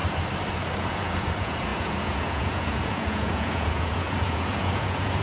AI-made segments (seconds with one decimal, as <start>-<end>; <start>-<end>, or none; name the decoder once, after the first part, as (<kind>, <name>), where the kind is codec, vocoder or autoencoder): 0.8-5.2 (vocoder, Vocos)